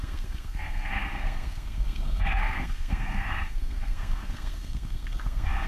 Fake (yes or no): yes